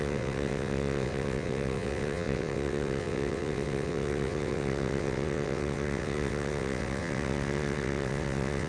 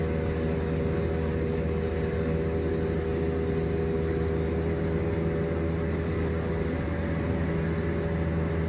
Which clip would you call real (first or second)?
second